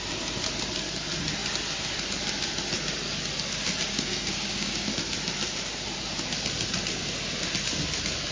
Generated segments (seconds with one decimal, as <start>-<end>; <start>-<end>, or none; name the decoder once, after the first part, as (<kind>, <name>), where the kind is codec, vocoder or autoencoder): 3.9-4.9 (codec, DAC)